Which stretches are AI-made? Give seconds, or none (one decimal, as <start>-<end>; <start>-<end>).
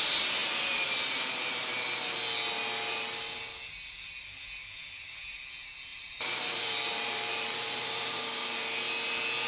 5.9-8.2